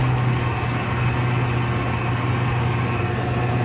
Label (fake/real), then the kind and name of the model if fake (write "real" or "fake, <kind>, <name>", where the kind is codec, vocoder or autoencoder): real